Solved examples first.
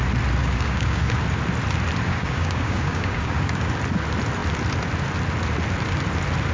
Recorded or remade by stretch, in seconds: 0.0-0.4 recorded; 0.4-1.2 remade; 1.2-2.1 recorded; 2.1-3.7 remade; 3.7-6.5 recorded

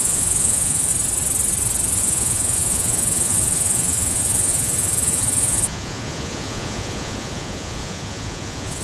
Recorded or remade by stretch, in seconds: 0.0-0.9 remade; 0.9-2.0 recorded; 2.0-8.8 remade

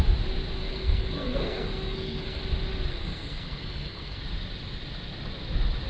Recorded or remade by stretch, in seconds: 0.0-0.6 recorded; 0.6-2.4 remade; 2.4-2.9 recorded; 2.9-4.2 remade; 4.2-5.9 recorded

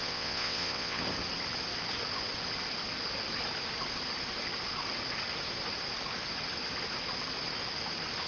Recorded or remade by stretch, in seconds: 0.0-1.0 remade; 1.0-8.3 recorded